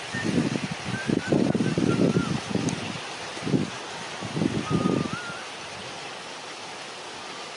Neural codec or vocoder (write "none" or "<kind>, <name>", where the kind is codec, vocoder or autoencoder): none